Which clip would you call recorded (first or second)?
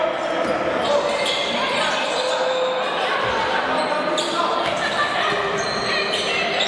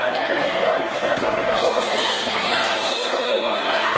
first